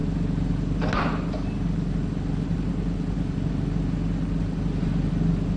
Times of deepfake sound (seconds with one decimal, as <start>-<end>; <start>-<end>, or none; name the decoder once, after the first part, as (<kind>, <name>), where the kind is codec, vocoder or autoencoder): none